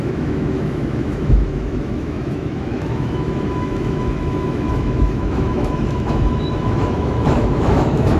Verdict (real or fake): fake